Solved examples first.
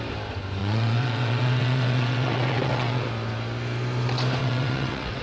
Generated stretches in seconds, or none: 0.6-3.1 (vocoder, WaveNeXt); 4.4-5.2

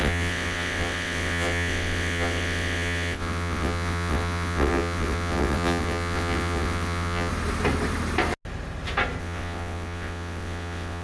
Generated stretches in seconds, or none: 0.0-7.3 (vocoder, WaveNeXt); 9.2-11.0

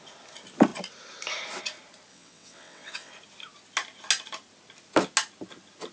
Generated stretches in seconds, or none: 2.1-3.1 (vocoder, WaveNeXt)

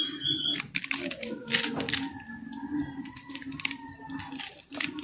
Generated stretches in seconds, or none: none

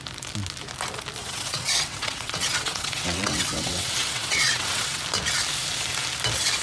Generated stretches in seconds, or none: 1.2-5.0 (vocoder, WaveNeXt)

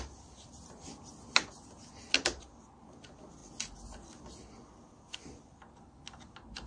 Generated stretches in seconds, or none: none

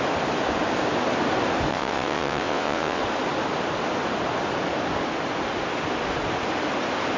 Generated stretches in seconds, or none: 1.7-3.0 (vocoder, WaveNeXt)

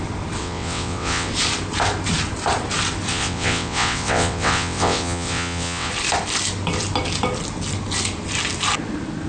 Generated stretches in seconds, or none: 0.4-1.3 (vocoder, WaveNeXt); 3.1-5.9